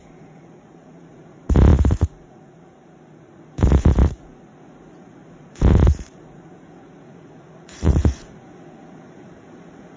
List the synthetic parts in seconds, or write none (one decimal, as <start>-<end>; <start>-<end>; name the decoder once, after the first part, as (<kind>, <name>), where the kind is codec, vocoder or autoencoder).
0.0-10.0 (vocoder, Vocos)